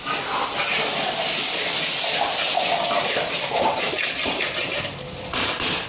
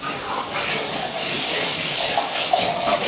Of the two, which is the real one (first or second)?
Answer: first